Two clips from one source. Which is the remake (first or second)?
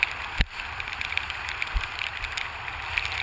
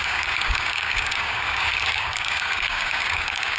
second